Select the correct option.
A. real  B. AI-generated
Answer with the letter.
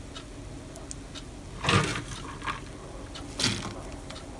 A